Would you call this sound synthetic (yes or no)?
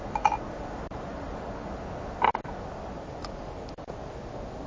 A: no